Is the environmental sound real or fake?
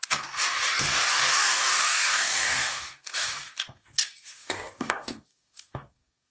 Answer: fake